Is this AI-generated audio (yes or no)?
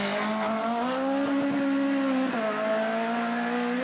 no